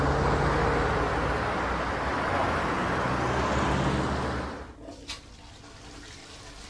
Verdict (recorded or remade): recorded